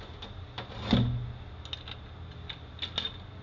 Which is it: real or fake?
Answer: real